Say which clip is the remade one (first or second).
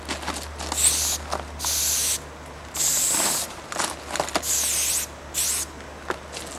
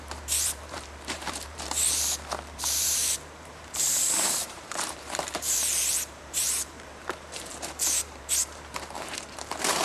second